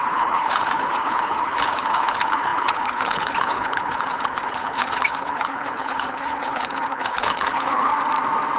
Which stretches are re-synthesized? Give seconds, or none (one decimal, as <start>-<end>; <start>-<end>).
0.0-7.9